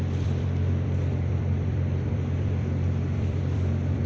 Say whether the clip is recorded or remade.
remade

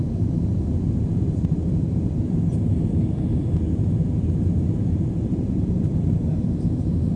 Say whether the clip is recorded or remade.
remade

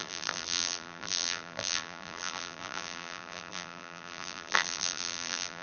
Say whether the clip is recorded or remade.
remade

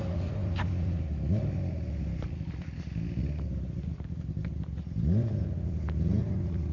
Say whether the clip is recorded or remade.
recorded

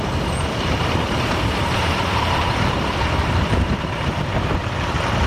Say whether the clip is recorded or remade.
remade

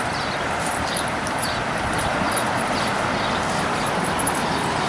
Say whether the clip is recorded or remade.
remade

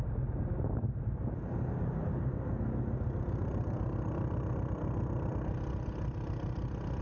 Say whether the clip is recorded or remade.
recorded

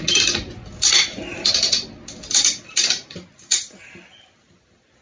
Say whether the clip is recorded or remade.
recorded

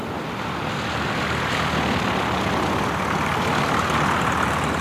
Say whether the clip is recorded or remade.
recorded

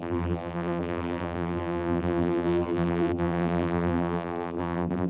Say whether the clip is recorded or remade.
remade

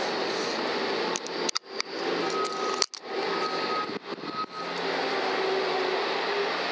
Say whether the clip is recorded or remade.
recorded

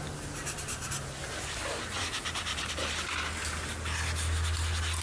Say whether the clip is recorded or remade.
recorded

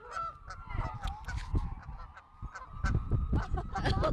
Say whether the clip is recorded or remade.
recorded